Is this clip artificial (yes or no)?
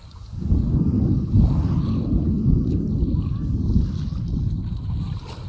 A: no